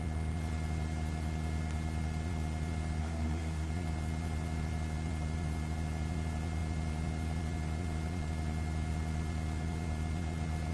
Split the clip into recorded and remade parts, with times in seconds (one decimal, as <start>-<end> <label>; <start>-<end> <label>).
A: 0.0-3.0 recorded; 3.0-3.7 remade; 3.7-10.7 recorded